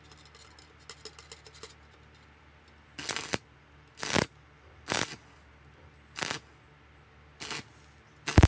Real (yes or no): yes